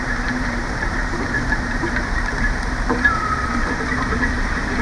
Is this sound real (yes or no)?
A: no